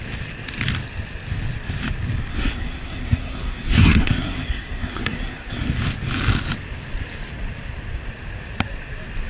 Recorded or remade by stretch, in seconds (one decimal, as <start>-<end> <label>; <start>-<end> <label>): 0.0-2.3 recorded; 2.3-5.7 remade; 5.7-9.3 recorded